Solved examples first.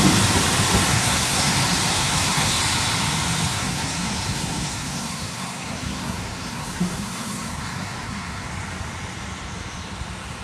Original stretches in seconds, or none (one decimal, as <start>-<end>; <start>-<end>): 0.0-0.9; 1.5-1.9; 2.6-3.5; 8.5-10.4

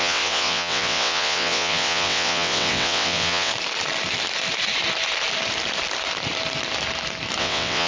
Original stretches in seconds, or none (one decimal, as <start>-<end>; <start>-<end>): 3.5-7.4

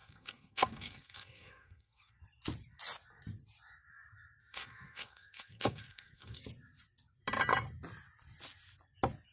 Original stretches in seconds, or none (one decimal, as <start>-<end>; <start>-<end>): 2.2-4.4; 6.4-9.3

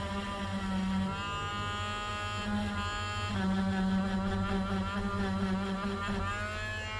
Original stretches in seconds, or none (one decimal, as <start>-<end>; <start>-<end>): 0.0-7.0

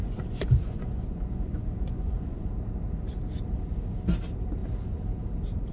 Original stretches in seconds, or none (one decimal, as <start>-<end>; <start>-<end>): 2.5-5.7